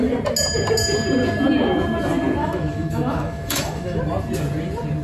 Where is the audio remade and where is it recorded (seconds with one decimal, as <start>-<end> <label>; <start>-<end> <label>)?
0.0-2.4 recorded; 2.4-4.0 remade; 4.0-5.0 recorded